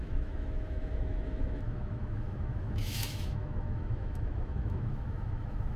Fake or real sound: fake